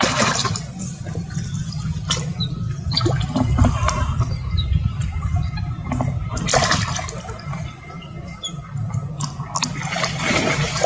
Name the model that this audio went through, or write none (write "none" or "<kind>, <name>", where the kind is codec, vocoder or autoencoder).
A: none